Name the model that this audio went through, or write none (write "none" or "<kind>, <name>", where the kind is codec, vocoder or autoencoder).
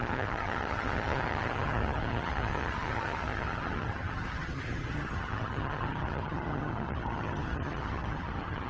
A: vocoder, HiFi-GAN